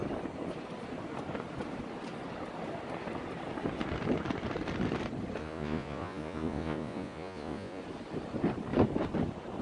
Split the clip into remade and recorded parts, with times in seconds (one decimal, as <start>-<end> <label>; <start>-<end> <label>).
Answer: 0.0-5.4 recorded; 5.4-7.8 remade; 7.8-9.6 recorded